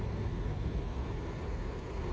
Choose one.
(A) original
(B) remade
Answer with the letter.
A